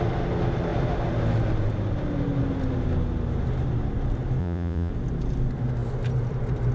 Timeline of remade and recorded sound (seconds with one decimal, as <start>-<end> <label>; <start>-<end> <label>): 0.0-4.4 recorded; 4.4-4.9 remade; 4.9-6.7 recorded